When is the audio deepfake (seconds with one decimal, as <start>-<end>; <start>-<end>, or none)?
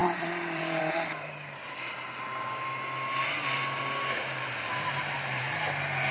0.0-0.8